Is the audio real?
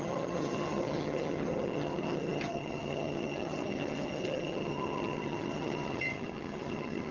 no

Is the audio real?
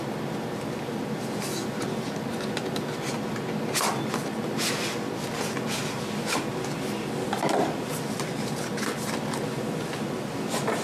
yes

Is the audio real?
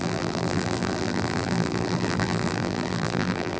no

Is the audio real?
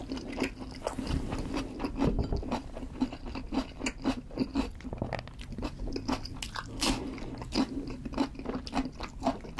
yes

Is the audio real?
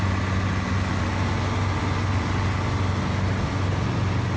yes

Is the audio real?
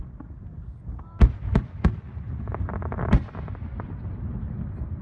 yes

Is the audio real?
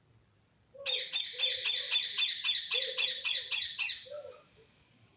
yes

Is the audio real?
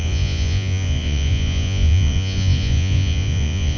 no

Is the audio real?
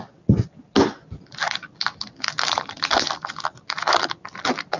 yes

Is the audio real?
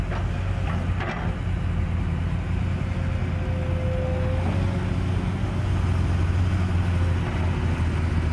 yes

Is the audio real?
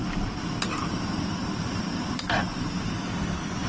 yes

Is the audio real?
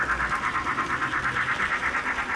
yes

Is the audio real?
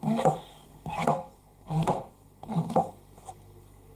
no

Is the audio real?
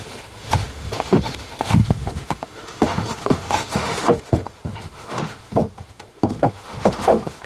no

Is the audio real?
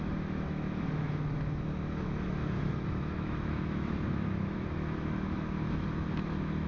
no